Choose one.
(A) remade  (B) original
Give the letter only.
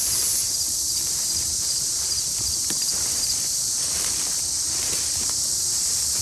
A